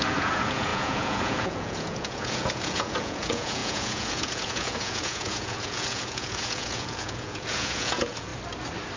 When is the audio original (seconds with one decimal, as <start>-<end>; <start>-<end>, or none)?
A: 8.3-9.0